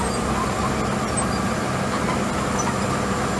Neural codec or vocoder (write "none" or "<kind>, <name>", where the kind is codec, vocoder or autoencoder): none